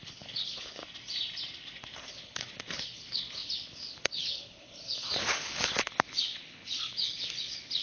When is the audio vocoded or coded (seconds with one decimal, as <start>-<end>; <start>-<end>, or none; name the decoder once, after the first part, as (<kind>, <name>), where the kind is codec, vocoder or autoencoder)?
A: 0.0-0.8 (codec, HILCodec); 2.0-7.8